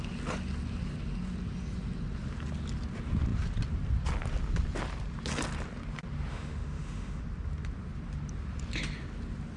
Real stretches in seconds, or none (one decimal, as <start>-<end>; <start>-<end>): 0.0-6.3; 7.2-9.6